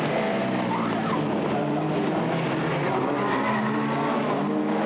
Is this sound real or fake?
real